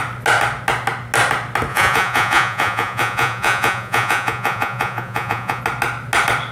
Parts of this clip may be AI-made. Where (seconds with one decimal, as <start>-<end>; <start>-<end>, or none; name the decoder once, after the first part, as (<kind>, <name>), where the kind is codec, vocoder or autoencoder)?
1.7-5.6 (vocoder, Vocos)